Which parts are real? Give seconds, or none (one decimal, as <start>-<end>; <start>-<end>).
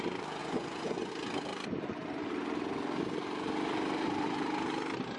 0.0-0.4; 1.1-5.2